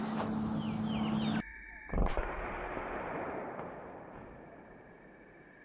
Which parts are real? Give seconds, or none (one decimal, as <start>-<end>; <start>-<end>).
0.0-1.5; 4.9-5.6